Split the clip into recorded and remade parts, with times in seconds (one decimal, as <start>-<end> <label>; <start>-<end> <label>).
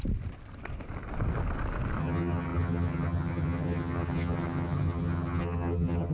0.0-2.0 recorded; 2.0-6.1 remade